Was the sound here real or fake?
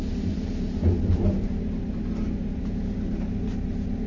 real